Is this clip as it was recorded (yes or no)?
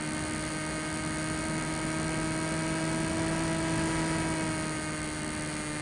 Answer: yes